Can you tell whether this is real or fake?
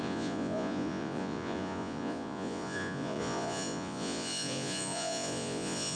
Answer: fake